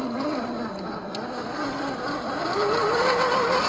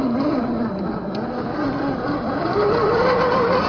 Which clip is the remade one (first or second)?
second